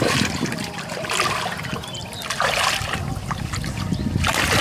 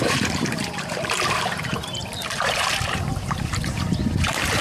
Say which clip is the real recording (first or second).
first